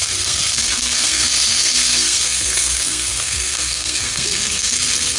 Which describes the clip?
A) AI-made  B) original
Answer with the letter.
A